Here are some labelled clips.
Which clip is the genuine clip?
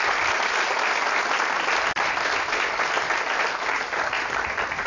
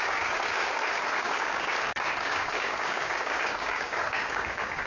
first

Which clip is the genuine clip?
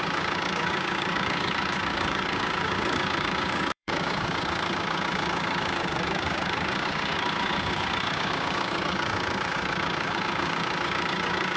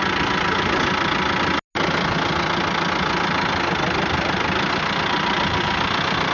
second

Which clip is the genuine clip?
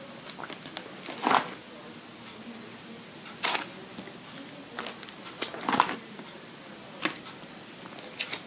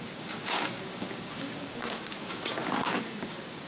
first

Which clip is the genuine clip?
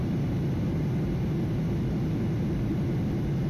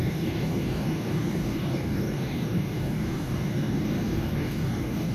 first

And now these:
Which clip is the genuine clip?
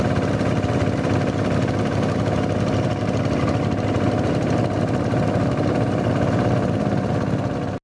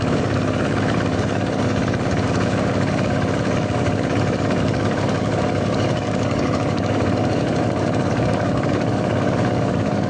first